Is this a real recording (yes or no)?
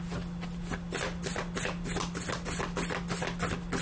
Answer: yes